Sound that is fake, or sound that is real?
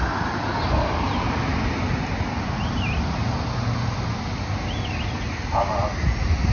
real